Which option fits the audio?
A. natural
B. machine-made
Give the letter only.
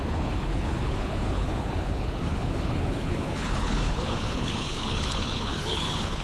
B